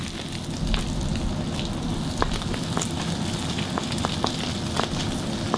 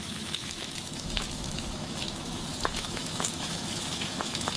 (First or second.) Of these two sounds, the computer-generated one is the second